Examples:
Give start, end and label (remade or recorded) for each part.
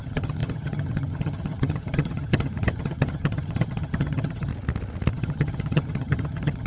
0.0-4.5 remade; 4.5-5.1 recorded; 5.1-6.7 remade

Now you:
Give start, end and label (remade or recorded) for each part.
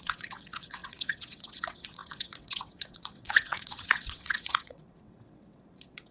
0.0-6.1 remade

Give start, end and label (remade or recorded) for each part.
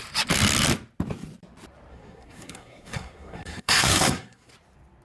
0.0-1.9 recorded; 1.9-4.5 remade; 4.5-5.0 recorded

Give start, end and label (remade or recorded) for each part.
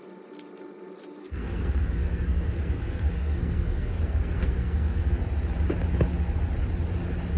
0.0-1.2 recorded; 1.2-5.2 remade; 5.2-7.4 recorded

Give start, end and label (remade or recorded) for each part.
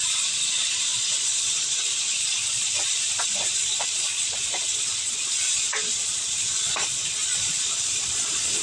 0.0-8.6 remade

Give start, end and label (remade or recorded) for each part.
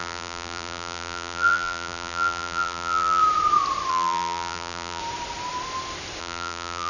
0.0-3.2 remade; 3.2-3.9 recorded; 3.9-5.0 remade; 5.0-6.2 recorded; 6.2-6.9 remade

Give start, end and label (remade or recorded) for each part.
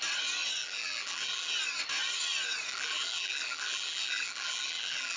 0.0-0.6 recorded; 0.6-1.5 remade; 1.5-2.7 recorded; 2.7-5.2 remade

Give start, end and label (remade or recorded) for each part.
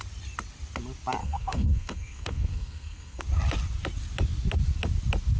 0.0-1.2 recorded; 1.2-3.2 remade; 3.2-5.4 recorded